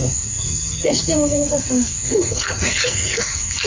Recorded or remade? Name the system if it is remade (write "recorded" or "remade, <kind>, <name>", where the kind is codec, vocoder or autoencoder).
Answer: remade, codec, SNAC